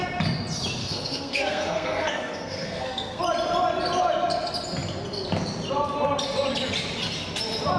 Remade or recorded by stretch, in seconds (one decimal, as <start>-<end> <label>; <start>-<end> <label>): 0.0-0.8 recorded; 0.8-3.2 remade; 3.2-7.8 recorded